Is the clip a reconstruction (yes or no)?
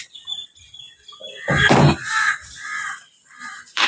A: yes